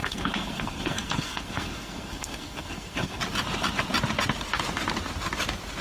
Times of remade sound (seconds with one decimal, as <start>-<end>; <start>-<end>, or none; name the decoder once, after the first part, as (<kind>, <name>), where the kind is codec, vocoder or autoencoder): 0.0-3.2 (codec, SNAC)